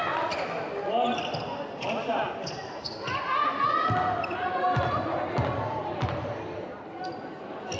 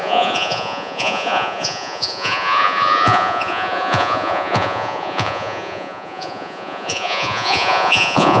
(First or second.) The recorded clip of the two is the first